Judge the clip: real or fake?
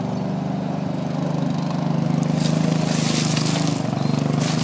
real